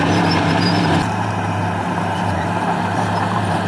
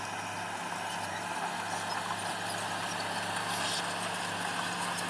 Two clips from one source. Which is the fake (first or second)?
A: first